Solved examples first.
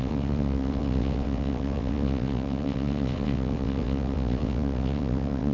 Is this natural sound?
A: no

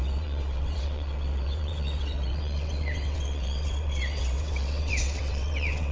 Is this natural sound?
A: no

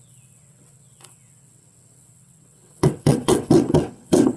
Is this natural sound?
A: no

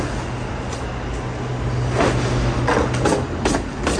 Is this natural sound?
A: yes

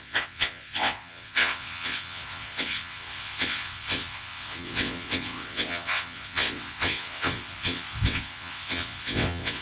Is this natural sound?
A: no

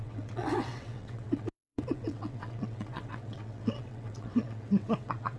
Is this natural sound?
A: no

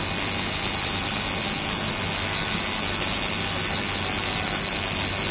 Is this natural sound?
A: yes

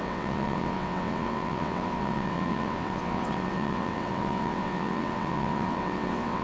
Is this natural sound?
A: no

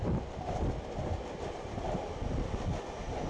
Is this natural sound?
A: yes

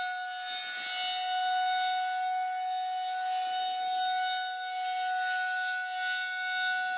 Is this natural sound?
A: yes